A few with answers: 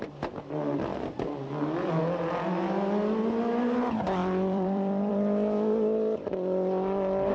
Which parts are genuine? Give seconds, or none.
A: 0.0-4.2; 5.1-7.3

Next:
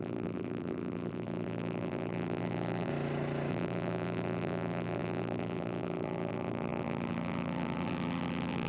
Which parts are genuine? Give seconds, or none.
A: 2.9-3.5

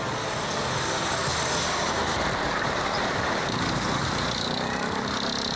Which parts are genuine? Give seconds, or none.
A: 0.0-1.3; 3.8-5.6

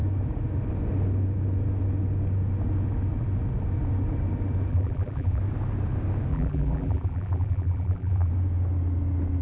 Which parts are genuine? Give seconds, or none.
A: 0.0-4.7; 5.4-6.3; 8.3-9.4